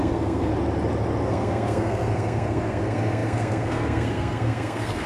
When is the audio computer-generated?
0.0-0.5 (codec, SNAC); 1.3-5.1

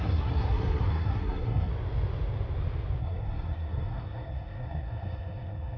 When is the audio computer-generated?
0.0-1.7 (codec, SNAC); 3.0-5.8

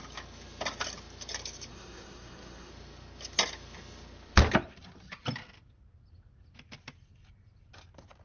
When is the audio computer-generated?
1.7-2.7 (codec, SNAC)

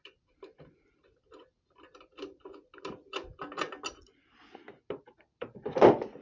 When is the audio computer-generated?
none